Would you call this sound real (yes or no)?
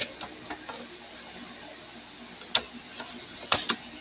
yes